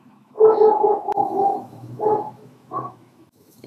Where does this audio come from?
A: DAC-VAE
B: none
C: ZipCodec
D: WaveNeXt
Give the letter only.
A